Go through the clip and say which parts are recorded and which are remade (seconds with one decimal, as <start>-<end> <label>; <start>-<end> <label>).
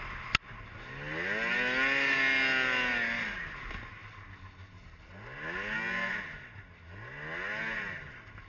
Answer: 0.0-8.5 recorded